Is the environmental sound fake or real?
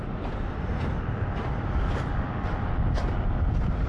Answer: real